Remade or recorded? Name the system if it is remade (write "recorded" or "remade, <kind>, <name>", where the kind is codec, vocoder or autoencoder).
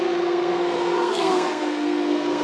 remade, codec, SNAC